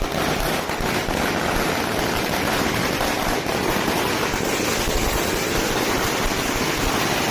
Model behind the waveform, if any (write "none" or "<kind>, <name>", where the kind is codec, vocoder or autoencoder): none